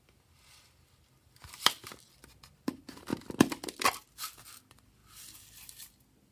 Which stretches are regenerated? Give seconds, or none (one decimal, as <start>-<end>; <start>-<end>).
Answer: none